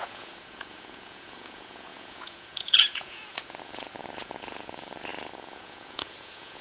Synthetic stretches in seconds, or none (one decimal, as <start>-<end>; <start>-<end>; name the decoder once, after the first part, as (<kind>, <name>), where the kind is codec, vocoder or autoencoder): 0.0-6.6 (vocoder, Vocos)